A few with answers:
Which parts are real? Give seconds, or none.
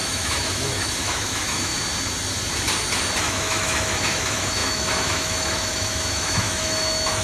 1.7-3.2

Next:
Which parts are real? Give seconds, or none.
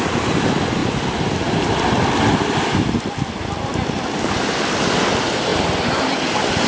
0.0-6.7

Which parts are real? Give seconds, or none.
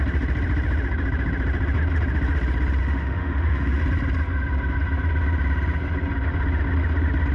0.0-2.8; 3.8-7.3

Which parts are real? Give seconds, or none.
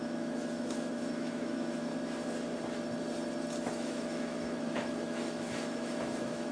1.9-3.7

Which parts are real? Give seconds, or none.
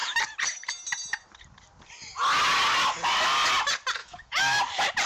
0.0-4.0; 4.6-5.1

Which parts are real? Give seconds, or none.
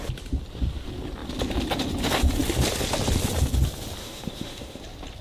0.0-4.0; 4.8-5.2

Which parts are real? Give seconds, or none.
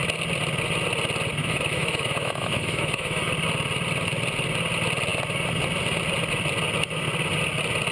0.0-1.4; 3.3-7.9